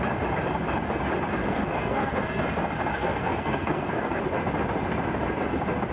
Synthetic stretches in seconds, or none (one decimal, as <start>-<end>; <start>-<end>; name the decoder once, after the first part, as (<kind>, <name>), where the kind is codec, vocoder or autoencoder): 1.4-2.4 (codec, SNAC); 2.9-4.2